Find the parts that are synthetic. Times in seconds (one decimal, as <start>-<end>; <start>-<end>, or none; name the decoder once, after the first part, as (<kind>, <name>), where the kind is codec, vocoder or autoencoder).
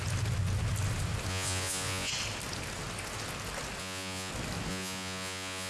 1.3-2.1 (vocoder, Vocos); 3.8-4.3; 4.7-5.7